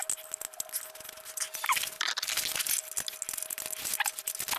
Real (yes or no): yes